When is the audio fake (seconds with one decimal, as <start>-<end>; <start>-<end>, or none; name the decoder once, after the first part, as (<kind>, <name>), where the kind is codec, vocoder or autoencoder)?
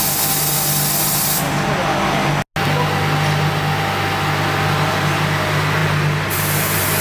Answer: none